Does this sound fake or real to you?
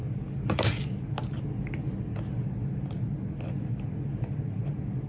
real